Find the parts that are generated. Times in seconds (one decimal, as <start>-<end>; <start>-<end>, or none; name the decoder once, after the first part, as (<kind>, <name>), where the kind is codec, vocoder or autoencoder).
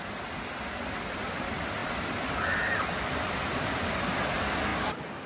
1.8-3.6 (vocoder, BigVGAN v2); 4.7-5.3